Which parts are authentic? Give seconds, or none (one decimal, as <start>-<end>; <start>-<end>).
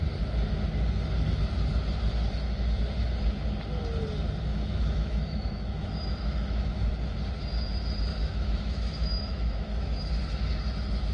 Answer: 0.0-4.5; 6.9-8.1; 10.1-11.1